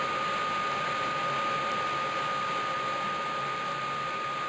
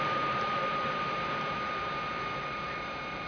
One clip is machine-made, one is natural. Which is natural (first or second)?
first